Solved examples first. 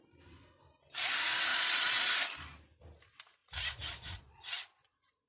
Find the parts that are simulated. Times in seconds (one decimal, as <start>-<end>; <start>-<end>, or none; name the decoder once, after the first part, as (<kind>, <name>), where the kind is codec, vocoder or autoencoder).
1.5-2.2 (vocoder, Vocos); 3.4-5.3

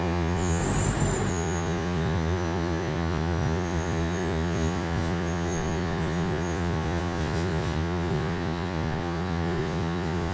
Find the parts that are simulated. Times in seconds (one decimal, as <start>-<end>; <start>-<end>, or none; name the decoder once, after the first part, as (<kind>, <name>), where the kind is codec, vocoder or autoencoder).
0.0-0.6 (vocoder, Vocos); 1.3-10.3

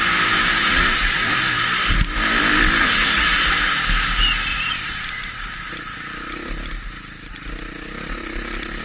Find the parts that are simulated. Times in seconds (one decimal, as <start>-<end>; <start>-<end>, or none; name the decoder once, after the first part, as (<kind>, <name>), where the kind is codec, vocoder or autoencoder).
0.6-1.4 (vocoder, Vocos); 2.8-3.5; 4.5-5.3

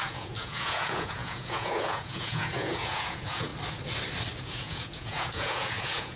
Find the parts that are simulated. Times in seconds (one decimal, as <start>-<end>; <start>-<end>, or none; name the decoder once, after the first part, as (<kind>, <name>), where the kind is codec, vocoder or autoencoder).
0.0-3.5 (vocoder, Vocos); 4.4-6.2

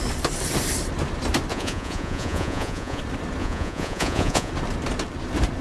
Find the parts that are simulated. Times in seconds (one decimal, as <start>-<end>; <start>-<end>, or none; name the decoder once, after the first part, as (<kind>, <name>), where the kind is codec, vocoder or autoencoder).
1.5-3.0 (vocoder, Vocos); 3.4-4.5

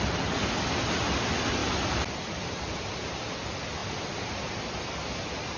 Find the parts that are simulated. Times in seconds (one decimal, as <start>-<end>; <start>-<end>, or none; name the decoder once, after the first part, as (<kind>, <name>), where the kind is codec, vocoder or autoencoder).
none

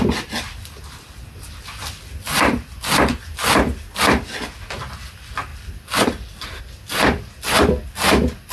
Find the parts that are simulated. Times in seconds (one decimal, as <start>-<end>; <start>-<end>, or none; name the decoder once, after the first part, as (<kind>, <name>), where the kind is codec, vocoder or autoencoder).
none